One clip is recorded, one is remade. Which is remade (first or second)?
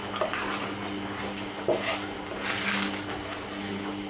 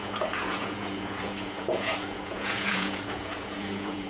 second